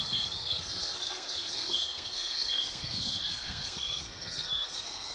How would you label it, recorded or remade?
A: remade